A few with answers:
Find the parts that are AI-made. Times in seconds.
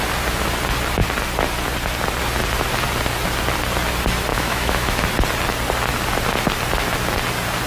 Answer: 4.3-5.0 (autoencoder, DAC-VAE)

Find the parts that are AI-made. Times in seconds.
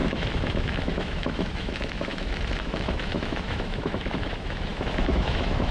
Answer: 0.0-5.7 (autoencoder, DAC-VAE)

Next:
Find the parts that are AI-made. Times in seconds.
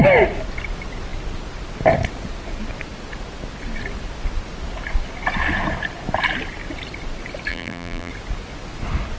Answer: 7.5-8.1 (vocoder, BigVGAN v2)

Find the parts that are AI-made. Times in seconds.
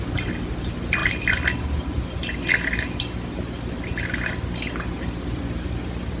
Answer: none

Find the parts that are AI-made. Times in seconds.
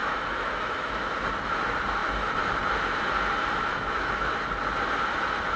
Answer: 0.0-1.1 (autoencoder, DAC-VAE); 3.7-4.3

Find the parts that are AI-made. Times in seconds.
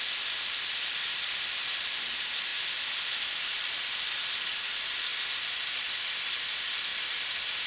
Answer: 0.0-2.5 (vocoder, BigVGAN v2); 3.4-5.1; 6.4-6.9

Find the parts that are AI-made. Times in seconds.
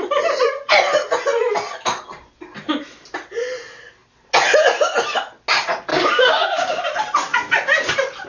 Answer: 5.9-6.8 (codec, DAC)